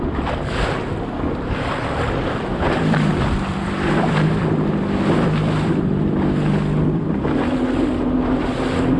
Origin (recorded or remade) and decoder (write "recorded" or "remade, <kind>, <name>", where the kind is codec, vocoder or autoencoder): recorded